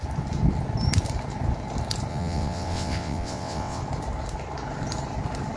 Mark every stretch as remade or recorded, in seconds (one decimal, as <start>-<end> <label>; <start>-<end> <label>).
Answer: 0.0-2.1 recorded; 2.1-3.8 remade; 3.8-5.6 recorded